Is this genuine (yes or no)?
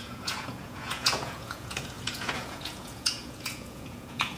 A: no